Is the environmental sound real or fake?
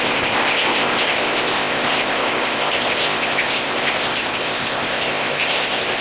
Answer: fake